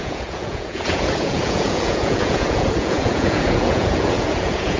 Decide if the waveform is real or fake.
fake